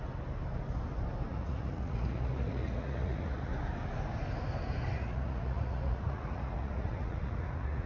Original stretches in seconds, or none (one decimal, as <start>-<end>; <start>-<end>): 0.0-1.3; 3.5-4.9